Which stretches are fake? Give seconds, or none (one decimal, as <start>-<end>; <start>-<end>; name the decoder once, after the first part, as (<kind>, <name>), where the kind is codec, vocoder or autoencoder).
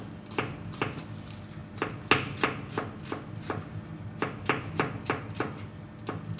none